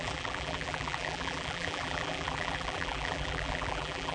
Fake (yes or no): yes